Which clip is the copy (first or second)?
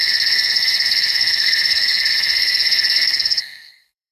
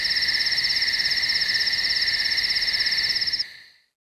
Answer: first